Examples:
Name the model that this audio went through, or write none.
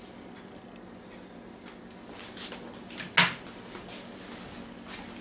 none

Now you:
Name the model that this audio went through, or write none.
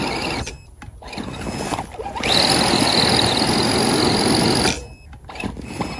none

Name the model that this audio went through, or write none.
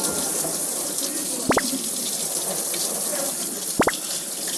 none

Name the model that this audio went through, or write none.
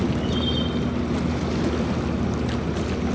none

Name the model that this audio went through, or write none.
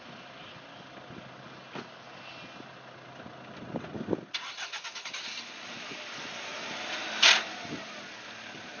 none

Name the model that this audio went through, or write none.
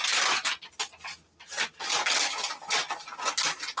none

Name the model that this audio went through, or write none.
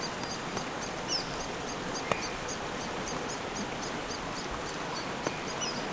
none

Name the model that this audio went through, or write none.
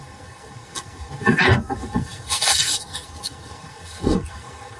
codec, SNAC